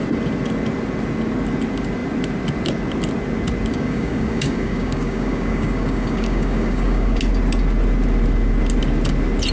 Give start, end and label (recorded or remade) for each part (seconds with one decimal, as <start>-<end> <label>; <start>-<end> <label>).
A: 0.0-3.7 recorded; 3.7-7.2 remade; 7.2-9.5 recorded